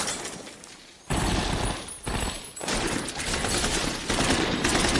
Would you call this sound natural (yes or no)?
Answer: yes